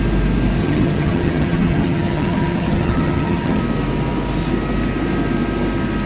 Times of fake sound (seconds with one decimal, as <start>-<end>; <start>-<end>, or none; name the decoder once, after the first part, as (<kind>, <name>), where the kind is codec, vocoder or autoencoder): 0.6-3.6 (vocoder, HiFi-GAN)